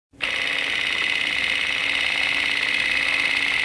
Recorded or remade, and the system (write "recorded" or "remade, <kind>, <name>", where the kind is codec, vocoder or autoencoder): recorded